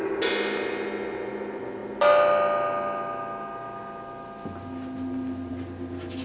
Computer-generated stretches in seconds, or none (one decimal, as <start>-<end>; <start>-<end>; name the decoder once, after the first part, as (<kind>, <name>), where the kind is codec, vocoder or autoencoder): none